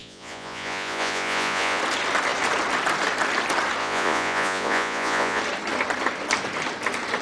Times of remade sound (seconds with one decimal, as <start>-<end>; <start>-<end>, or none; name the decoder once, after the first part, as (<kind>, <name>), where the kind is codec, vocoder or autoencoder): 0.0-1.8 (vocoder, Vocos); 3.8-5.4